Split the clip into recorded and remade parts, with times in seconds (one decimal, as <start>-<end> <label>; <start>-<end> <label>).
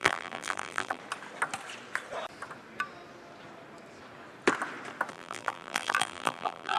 0.0-1.0 remade; 1.0-5.1 recorded; 5.1-6.8 remade